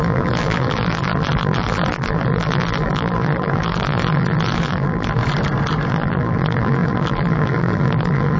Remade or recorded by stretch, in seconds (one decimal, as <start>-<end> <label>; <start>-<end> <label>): 0.0-5.2 remade; 5.2-5.9 recorded; 5.9-8.4 remade